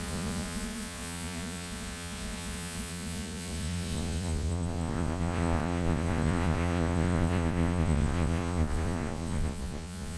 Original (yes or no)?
no